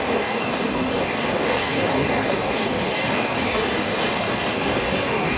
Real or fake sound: fake